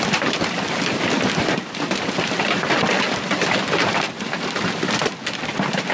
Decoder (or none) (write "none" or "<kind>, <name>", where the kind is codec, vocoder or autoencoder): none